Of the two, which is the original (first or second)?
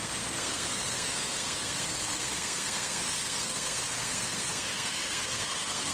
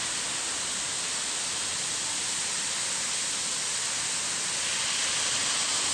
second